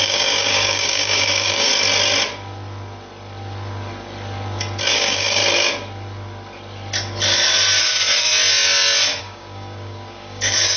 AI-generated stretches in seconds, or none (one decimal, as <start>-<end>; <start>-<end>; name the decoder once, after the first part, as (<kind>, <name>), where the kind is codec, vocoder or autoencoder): 0.0-1.7 (codec, DAC); 4.9-5.4; 7.8-8.3; 9.2-10.8